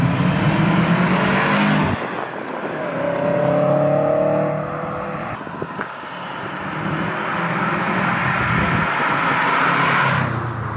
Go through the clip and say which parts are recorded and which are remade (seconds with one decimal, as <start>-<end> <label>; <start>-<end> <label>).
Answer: 0.0-10.8 recorded